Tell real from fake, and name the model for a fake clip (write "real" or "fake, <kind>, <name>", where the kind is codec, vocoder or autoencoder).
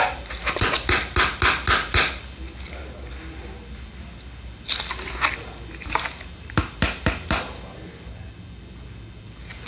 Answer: real